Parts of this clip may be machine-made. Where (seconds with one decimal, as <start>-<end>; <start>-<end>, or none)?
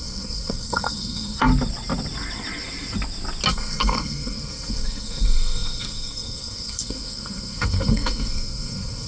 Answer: 0.0-1.5; 3.5-9.1